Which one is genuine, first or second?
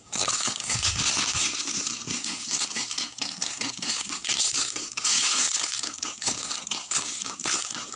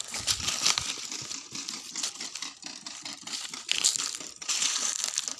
second